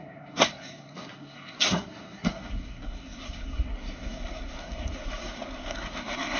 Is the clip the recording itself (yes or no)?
no